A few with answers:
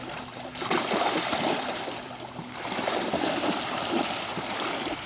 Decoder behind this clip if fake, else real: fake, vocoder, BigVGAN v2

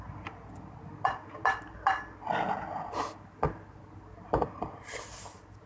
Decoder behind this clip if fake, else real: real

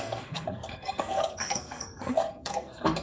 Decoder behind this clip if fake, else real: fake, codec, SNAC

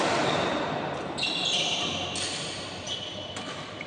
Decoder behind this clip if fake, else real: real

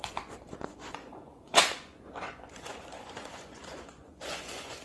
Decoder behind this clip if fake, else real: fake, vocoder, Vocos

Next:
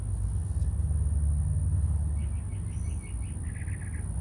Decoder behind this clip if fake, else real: real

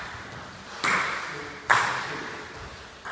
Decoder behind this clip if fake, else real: real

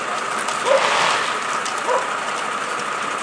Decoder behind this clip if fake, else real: real